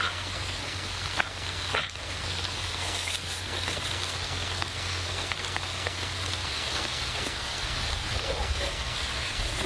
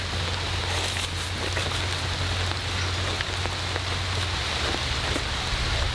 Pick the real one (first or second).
second